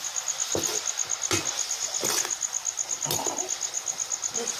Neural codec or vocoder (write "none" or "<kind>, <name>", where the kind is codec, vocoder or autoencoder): none